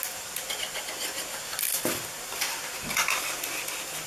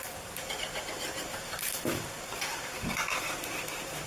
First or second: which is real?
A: first